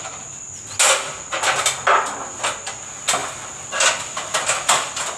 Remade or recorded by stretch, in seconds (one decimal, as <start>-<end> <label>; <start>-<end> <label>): 0.0-5.2 recorded